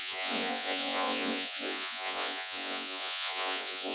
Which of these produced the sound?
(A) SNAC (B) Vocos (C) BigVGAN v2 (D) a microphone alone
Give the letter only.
B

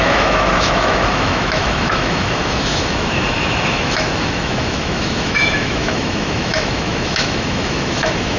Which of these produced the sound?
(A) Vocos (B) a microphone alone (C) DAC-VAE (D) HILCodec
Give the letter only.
C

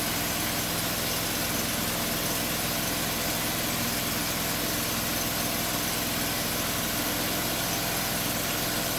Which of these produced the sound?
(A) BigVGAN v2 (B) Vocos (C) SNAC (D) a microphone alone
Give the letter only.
D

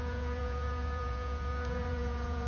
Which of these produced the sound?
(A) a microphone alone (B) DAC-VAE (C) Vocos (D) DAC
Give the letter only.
C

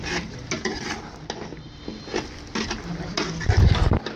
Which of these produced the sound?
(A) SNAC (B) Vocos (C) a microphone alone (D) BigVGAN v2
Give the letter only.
C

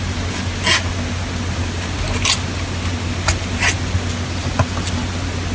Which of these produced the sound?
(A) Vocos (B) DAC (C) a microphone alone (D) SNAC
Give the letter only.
C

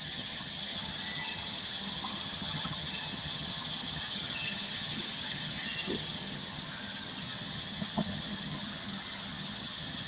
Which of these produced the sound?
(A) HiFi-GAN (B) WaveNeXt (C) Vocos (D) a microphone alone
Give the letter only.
A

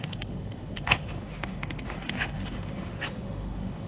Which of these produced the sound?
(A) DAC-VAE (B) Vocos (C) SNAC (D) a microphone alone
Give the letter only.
A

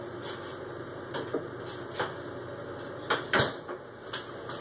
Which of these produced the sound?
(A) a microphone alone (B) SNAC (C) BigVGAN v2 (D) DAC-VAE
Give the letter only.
A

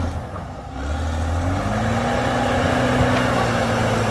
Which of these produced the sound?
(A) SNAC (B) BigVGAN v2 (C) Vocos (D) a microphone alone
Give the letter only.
D